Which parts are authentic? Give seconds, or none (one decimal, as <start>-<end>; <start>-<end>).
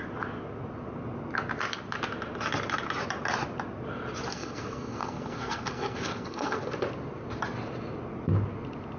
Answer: 0.0-4.3; 6.7-9.0